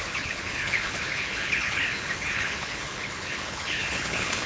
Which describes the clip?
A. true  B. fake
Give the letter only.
B